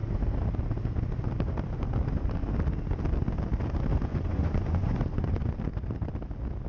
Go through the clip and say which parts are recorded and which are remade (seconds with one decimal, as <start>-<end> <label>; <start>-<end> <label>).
0.0-4.1 recorded; 4.1-5.5 remade; 5.5-6.7 recorded